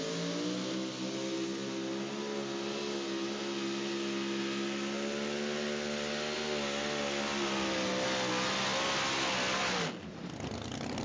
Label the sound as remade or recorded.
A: recorded